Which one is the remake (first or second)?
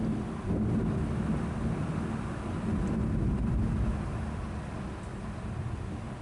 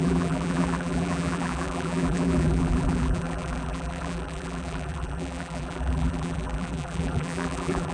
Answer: second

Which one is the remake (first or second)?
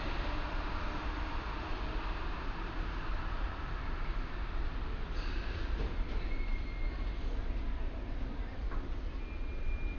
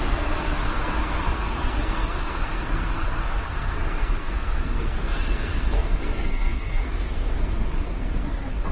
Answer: second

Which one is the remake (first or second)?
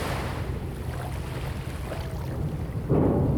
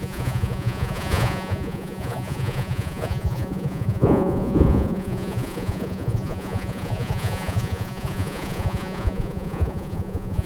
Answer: second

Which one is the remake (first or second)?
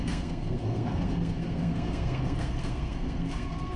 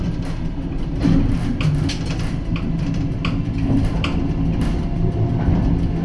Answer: first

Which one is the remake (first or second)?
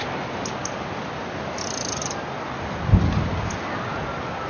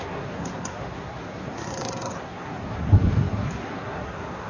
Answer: second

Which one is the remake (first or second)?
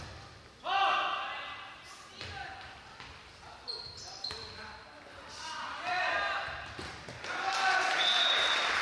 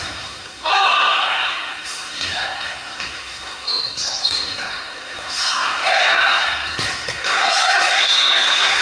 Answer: second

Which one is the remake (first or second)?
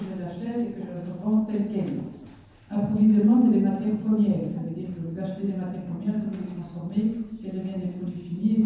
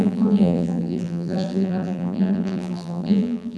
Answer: second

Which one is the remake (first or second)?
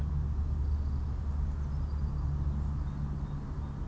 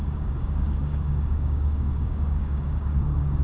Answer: second